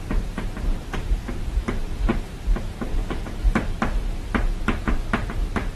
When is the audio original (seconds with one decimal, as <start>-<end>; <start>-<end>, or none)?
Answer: none